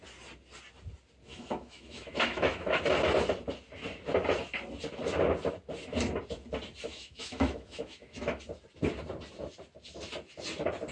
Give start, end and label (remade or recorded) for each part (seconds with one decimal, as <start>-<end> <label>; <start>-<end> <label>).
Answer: 0.0-1.3 recorded; 1.3-2.8 remade; 2.8-6.9 recorded; 6.9-8.4 remade; 8.4-10.9 recorded